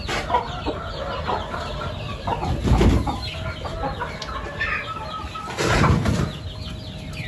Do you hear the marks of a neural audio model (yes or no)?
no